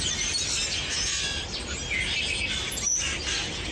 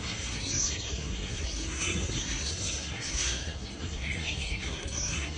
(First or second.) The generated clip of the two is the second